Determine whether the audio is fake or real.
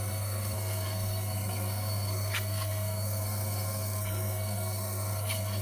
fake